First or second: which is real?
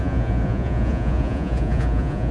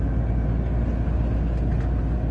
second